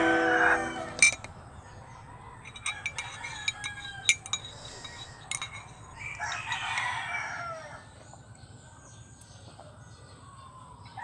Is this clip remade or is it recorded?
recorded